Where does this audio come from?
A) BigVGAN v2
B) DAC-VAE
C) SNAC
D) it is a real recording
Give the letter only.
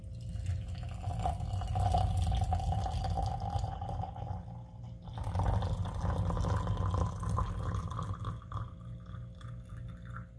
D